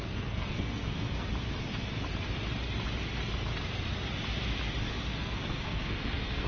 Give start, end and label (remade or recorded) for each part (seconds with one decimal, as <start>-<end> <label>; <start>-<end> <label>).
0.0-1.3 remade; 1.3-5.2 recorded; 5.2-6.5 remade